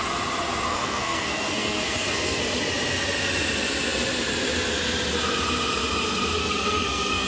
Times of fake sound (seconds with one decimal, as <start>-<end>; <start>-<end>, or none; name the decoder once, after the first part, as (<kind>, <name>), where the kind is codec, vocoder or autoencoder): 0.7-2.4 (codec, SNAC); 6.4-7.3

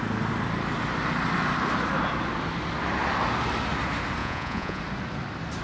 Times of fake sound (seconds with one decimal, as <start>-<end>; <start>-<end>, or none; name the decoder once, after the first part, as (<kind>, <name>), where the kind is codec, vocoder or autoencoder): 4.2-4.8 (vocoder, Vocos)

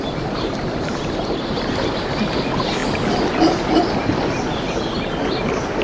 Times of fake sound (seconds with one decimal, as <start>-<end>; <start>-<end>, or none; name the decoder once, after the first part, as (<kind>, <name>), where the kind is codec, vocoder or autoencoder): none

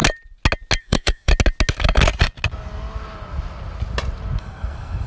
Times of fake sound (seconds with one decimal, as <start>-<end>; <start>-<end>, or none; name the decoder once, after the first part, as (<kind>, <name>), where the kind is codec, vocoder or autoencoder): 0.8-1.3 (codec, SNAC); 4.4-5.1

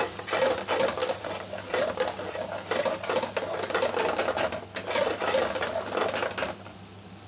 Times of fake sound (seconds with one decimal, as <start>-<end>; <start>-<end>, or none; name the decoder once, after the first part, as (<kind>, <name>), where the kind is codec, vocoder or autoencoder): none

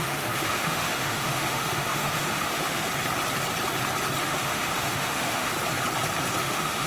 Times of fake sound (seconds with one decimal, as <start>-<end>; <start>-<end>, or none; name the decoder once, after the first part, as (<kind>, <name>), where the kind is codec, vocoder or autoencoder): 0.0-2.9 (autoencoder, DAC-VAE); 4.2-5.5; 6.4-6.9